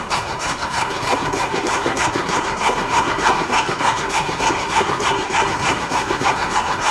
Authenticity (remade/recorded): remade